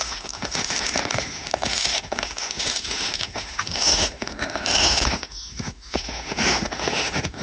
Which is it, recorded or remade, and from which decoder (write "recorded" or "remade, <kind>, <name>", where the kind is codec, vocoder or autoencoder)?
remade, autoencoder, DAC-VAE